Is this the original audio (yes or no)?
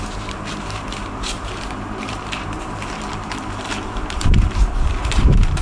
no